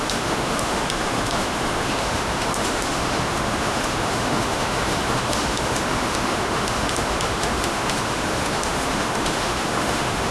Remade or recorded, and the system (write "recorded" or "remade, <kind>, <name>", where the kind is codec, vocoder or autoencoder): remade, autoencoder, DAC-VAE